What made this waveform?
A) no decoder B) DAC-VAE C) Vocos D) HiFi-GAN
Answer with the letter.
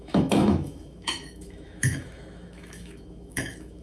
B